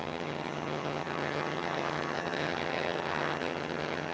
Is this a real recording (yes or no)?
no